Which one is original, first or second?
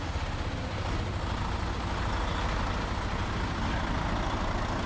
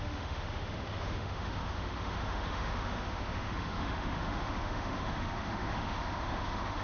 first